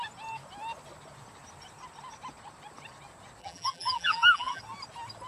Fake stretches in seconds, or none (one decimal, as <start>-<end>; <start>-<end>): 3.4-4.6